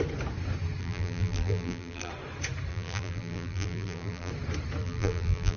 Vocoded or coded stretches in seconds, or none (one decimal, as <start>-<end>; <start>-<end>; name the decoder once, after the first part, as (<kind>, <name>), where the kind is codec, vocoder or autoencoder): 0.8-2.1 (vocoder, BigVGAN v2); 2.7-4.3; 4.8-5.6